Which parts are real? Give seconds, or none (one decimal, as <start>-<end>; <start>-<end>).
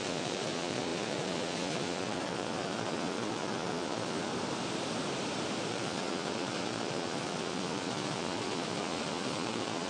4.3-5.7